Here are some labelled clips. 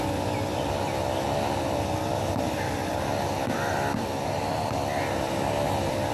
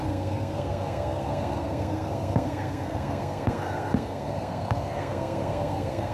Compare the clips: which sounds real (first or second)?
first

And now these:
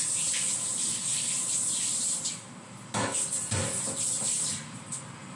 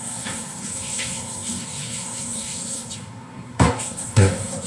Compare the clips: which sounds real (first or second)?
first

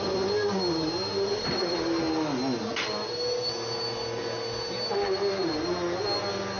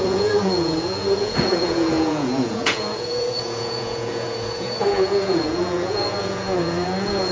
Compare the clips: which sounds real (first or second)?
first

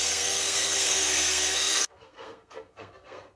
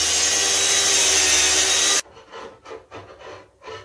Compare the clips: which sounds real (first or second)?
second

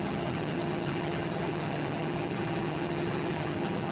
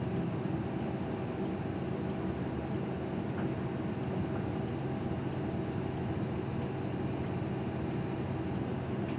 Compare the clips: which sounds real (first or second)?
second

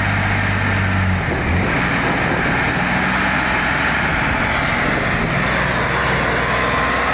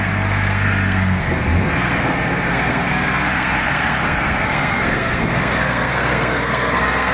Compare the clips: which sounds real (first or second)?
first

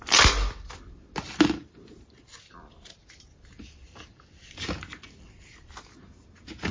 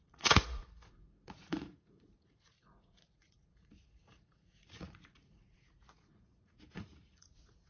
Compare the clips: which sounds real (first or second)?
first